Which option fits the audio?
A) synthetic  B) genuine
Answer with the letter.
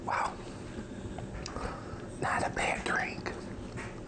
B